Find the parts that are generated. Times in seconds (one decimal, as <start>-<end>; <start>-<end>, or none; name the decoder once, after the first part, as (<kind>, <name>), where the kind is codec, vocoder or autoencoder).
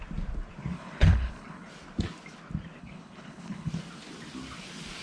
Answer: 0.7-1.7 (codec, HILCodec); 2.8-3.7